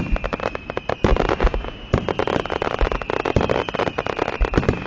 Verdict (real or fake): real